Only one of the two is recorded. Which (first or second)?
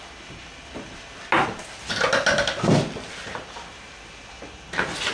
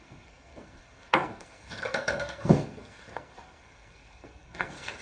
first